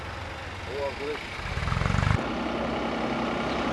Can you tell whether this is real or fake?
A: real